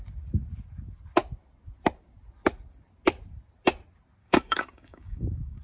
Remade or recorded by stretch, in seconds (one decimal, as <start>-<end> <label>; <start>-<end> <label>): 0.0-4.2 recorded; 4.2-5.6 remade